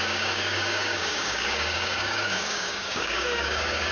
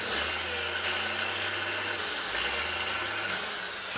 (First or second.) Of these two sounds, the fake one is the first